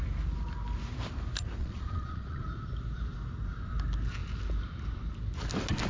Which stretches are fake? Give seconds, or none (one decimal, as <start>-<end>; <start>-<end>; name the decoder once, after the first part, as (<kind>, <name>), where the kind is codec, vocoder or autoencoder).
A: 1.6-2.4 (vocoder, Vocos)

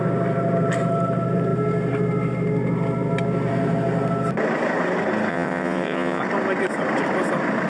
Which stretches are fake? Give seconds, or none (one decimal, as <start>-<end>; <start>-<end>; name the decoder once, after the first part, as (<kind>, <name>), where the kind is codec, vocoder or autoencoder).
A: 5.3-6.2 (vocoder, WaveNeXt)